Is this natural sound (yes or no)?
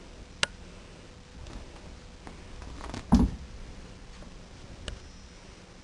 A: yes